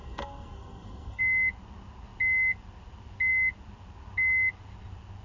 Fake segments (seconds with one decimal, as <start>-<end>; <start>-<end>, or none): 0.0-1.2